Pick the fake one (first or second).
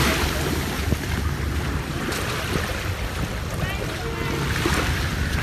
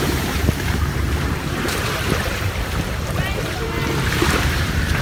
second